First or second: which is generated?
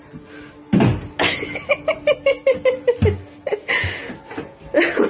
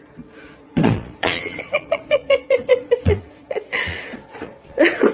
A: second